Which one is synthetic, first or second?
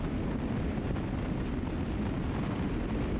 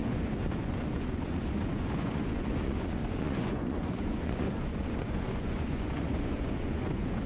second